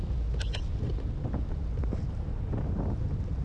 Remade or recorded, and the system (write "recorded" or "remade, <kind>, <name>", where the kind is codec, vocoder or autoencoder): recorded